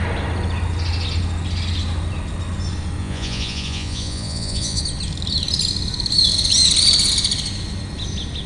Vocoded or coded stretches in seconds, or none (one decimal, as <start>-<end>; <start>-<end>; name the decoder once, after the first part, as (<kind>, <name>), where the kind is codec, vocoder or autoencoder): 3.0-4.8 (vocoder, Vocos)